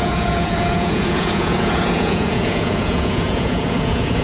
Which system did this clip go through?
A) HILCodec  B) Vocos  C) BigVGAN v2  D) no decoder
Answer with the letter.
B